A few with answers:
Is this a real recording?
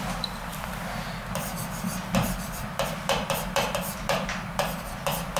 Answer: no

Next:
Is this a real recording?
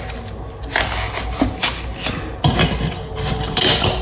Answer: yes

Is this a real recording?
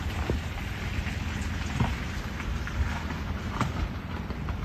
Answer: yes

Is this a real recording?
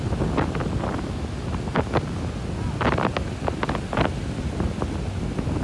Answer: yes